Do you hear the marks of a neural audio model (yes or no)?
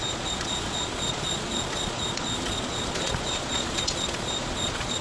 yes